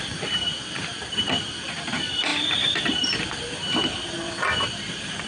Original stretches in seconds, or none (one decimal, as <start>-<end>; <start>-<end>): 4.2-5.3